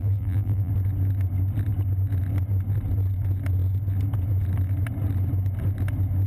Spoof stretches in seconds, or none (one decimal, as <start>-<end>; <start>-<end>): 0.0-0.7